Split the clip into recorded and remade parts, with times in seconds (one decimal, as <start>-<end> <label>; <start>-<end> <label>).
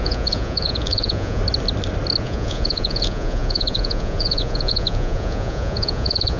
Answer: 0.0-1.4 remade; 1.4-2.2 recorded; 2.2-6.4 remade